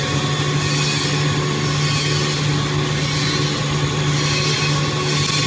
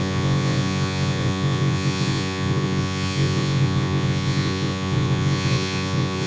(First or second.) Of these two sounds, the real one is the first